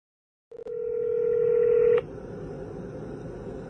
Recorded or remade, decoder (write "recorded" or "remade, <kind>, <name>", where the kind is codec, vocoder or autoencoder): recorded